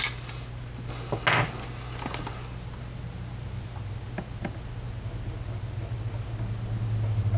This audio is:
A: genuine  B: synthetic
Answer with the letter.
A